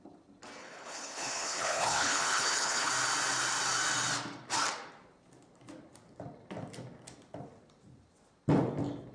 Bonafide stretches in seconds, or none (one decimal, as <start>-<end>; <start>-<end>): 0.0-0.6; 2.9-9.1